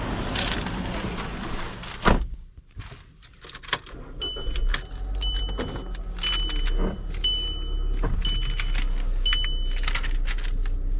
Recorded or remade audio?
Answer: recorded